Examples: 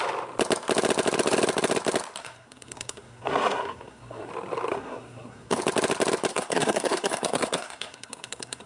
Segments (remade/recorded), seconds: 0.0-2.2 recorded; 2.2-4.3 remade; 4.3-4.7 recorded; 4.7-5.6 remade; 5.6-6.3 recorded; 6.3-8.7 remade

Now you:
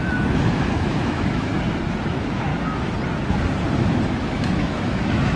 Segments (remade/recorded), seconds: 0.0-1.5 remade; 1.5-2.1 recorded; 2.1-2.5 remade; 2.5-4.2 recorded; 4.2-5.4 remade

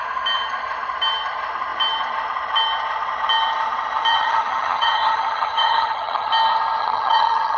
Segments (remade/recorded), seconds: 0.0-4.1 recorded; 4.1-6.3 remade; 6.3-6.8 recorded; 6.8-7.6 remade

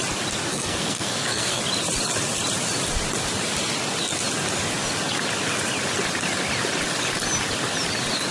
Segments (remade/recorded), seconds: 0.0-0.5 recorded; 0.5-1.6 remade; 1.6-8.3 recorded

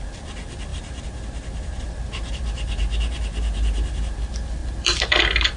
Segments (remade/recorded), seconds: 0.0-0.7 recorded; 0.7-2.3 remade; 2.3-4.6 recorded; 4.6-5.6 remade

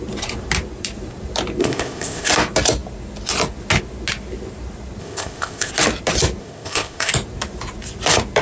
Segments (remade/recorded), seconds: 0.0-1.6 recorded; 1.6-2.3 remade; 2.3-5.0 recorded; 5.0-5.7 remade; 5.7-6.4 recorded; 6.4-7.1 remade; 7.1-8.4 recorded